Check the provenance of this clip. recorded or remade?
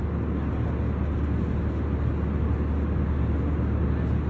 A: recorded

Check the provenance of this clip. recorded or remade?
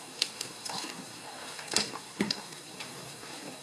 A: remade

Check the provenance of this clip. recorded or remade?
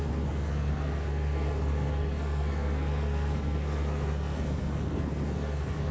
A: remade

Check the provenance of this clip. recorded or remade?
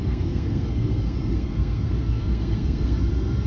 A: remade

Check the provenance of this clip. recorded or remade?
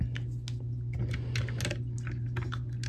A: recorded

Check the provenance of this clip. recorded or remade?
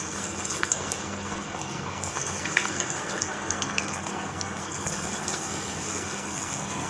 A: remade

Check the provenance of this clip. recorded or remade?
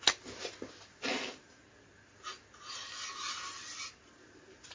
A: recorded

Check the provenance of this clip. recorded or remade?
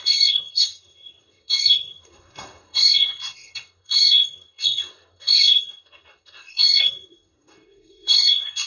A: remade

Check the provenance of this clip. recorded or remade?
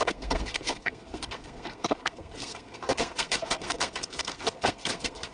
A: remade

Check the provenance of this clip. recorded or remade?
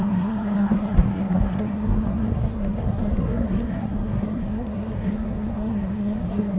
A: remade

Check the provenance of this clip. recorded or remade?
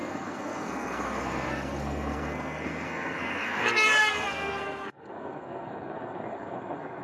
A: remade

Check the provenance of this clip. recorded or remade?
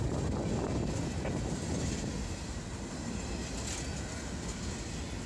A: recorded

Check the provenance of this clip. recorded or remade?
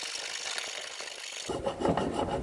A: recorded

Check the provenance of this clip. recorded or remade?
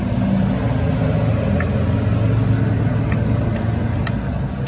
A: recorded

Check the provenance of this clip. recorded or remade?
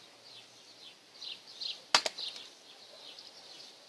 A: recorded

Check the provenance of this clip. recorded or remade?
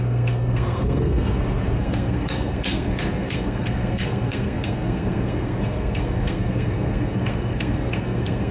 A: remade